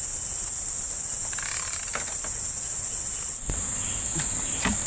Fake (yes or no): no